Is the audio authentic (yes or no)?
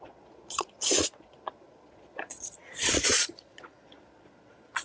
no